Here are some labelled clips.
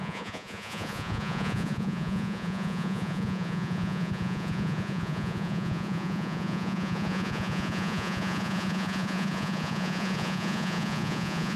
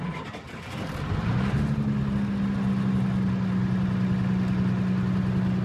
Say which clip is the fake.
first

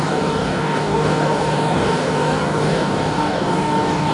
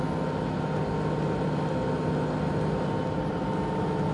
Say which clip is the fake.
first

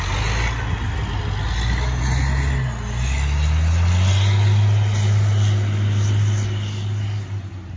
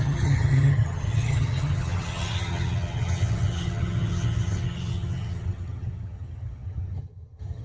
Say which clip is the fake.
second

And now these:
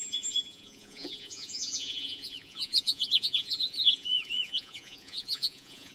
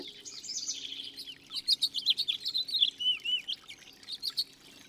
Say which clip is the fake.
first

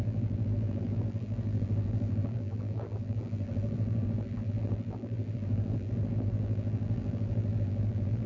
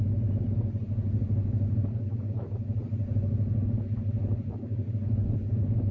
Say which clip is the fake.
first